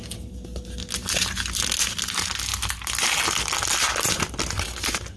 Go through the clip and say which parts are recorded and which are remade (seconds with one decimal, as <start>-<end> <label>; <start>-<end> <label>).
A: 0.0-5.2 recorded